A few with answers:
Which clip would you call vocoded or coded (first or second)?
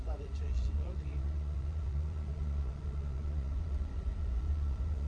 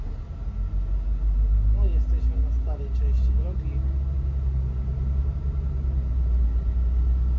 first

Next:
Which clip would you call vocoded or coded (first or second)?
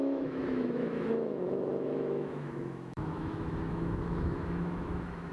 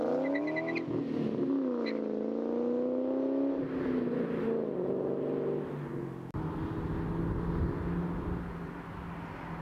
first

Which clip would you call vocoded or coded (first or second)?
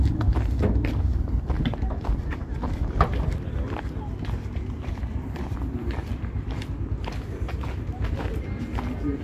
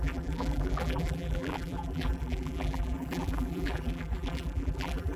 second